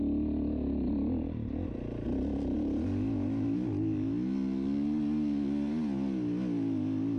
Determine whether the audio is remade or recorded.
recorded